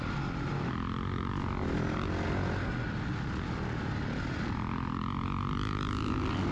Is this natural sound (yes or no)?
yes